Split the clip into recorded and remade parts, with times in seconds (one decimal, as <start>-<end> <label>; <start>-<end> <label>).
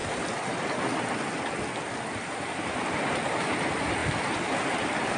0.0-5.2 recorded